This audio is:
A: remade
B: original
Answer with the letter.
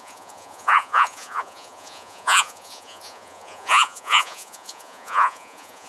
A